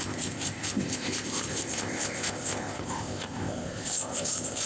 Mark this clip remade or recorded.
remade